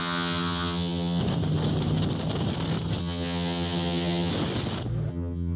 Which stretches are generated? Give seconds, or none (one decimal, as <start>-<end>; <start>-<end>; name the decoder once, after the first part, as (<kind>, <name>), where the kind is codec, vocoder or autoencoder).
0.0-1.2 (vocoder, HiFi-GAN); 3.0-4.3; 5.1-5.6